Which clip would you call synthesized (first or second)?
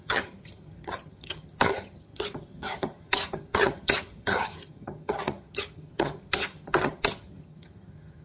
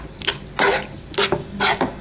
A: first